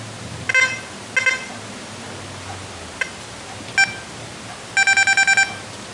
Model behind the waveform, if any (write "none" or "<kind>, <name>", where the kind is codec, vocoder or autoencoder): none